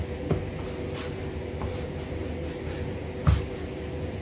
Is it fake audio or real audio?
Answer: real